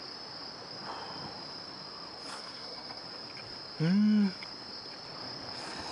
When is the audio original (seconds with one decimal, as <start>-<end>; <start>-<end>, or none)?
0.0-2.3; 3.0-5.9